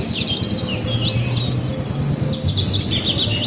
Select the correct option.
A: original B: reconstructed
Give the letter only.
A